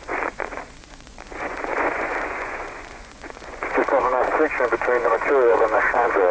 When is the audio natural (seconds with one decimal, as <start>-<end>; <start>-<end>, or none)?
none

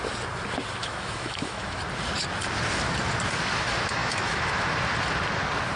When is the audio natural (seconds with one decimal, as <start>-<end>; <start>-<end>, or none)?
0.0-0.8; 1.8-4.0; 4.7-5.8

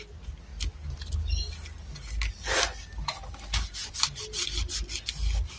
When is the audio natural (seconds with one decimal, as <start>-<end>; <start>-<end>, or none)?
0.0-5.6

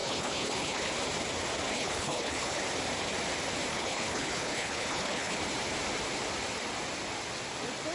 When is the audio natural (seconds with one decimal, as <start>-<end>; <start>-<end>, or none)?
0.9-1.7; 2.6-3.7; 5.4-7.9